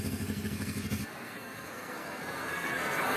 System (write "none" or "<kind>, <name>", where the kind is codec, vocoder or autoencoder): codec, SNAC